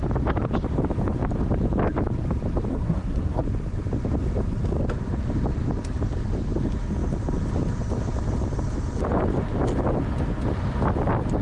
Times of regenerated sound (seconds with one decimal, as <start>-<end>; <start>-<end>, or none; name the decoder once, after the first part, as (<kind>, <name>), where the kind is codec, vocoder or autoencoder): 2.7-3.4 (codec, SNAC)